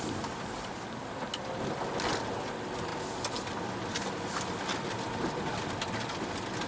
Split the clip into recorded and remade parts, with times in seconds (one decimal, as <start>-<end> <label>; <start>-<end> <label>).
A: 0.0-6.7 recorded